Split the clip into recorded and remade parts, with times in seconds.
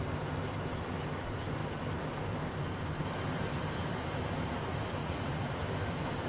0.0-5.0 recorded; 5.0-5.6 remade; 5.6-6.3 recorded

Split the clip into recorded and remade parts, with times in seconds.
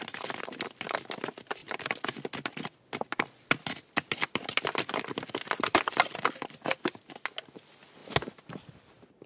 0.0-9.3 recorded